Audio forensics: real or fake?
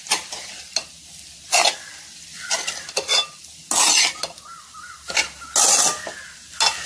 real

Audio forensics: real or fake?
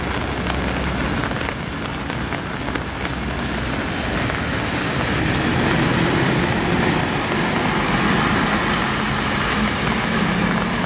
real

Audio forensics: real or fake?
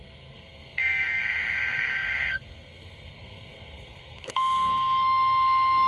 fake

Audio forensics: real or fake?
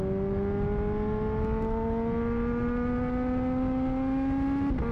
real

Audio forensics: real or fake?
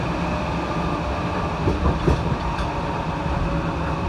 real